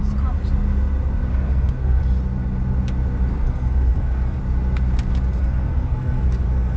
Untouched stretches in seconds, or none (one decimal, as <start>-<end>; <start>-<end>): 0.0-1.3; 2.0-3.3; 4.4-5.4